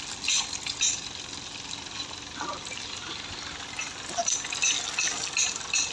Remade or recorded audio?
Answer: recorded